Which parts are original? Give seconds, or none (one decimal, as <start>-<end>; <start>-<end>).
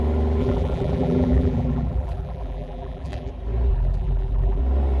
0.0-0.4; 3.3-3.7; 4.6-5.0